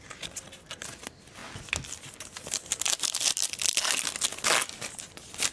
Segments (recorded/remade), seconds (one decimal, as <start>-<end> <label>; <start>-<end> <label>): 0.0-5.5 recorded